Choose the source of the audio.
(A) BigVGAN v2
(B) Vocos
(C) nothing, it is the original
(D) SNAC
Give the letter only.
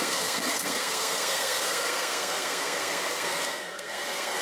D